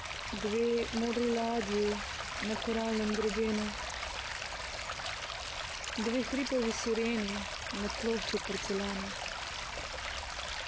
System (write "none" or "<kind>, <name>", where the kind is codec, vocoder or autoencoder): none